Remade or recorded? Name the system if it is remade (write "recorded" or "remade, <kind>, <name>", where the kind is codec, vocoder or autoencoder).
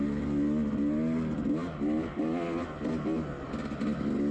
recorded